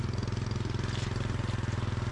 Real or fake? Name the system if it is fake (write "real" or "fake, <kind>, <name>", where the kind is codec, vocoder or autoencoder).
real